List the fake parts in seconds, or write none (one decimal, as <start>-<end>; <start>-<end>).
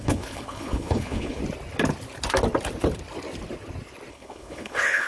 0.0-1.4; 4.1-5.1